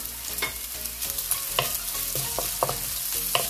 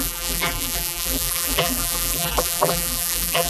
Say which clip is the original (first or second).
first